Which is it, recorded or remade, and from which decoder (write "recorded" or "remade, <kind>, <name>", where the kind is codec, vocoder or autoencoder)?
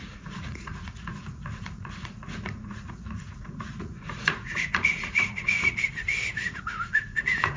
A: remade, vocoder, Vocos